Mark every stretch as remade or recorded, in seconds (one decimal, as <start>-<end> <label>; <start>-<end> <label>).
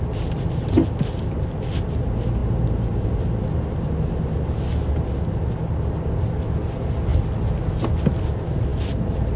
0.0-8.7 recorded; 8.7-9.4 remade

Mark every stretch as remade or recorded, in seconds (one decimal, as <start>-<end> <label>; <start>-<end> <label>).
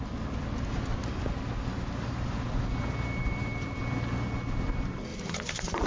0.0-3.2 recorded; 3.2-3.8 remade; 3.8-5.1 recorded; 5.1-5.9 remade